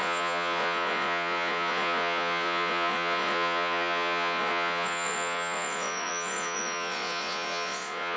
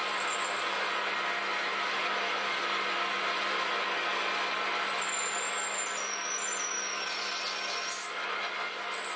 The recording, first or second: second